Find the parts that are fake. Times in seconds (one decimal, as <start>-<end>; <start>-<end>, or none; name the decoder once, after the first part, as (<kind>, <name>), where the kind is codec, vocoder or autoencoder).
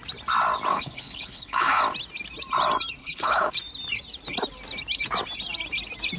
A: 0.7-1.8 (codec, HILCodec); 3.0-3.5